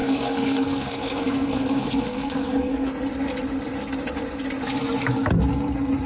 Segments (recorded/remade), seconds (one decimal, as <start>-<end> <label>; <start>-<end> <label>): 0.0-2.9 remade; 2.9-6.1 recorded